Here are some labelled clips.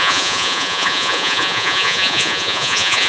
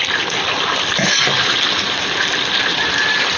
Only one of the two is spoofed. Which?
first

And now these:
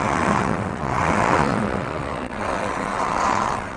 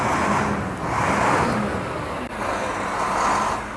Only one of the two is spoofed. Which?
first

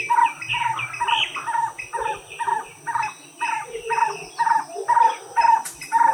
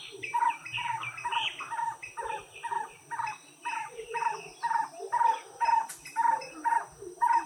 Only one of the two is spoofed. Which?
second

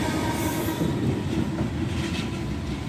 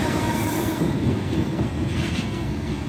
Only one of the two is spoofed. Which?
second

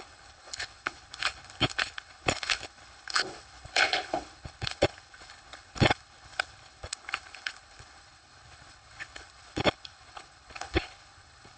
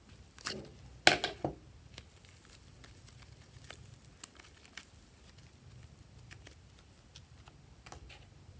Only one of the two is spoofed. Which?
first